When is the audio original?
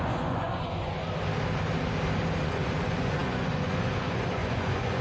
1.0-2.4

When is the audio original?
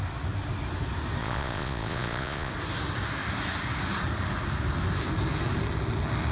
0.0-1.2; 2.5-6.3